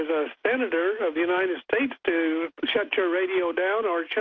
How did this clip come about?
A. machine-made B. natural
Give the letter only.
B